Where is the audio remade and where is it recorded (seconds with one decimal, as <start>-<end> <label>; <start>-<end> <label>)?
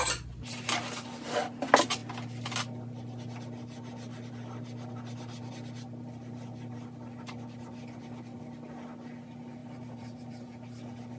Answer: 0.0-9.6 recorded; 9.6-10.3 remade; 10.3-11.2 recorded